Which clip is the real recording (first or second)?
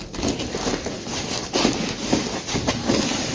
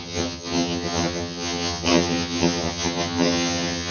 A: first